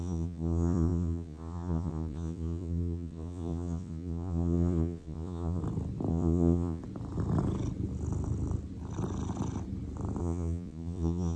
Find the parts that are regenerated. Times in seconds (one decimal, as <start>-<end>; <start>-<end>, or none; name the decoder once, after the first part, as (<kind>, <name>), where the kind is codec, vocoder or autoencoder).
0.0-5.6 (vocoder, Vocos); 6.1-6.8; 10.2-11.4